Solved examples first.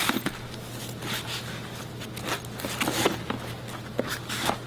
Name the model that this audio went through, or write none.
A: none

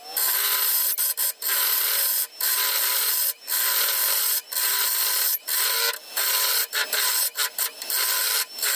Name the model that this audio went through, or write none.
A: none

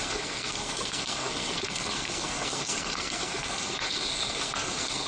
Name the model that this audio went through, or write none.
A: codec, SNAC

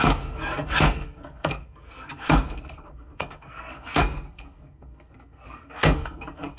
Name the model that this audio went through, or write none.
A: codec, SNAC